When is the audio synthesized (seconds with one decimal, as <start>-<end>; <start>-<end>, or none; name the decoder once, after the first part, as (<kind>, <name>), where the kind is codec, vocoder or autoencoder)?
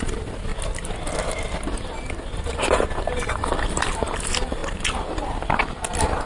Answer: 0.0-0.5 (vocoder, BigVGAN v2); 3.1-4.6